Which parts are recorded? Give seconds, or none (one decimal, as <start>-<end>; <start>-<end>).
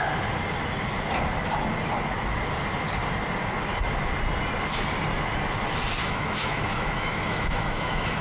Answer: 0.0-6.0